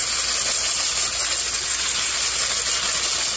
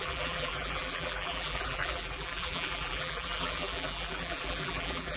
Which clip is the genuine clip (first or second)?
first